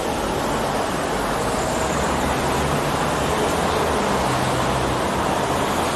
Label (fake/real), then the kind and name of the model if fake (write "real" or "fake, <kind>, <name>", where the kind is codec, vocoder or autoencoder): real